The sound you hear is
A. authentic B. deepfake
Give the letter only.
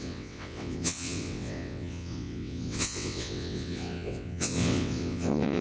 B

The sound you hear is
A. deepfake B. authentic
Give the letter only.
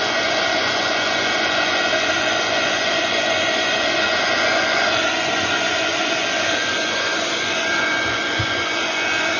A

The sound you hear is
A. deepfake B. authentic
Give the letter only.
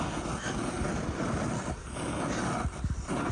B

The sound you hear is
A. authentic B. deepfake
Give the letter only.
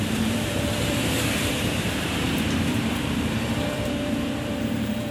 B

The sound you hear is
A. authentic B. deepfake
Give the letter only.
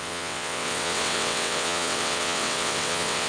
B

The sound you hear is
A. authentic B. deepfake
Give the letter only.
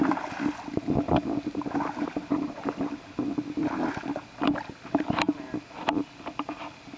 A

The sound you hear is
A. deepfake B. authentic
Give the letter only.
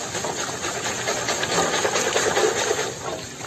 B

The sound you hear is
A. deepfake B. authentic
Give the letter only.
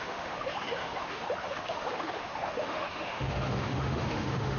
A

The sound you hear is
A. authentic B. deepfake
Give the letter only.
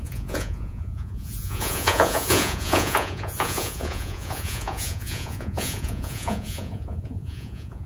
B